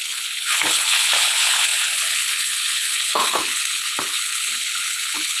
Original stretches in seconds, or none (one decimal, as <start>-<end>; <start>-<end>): none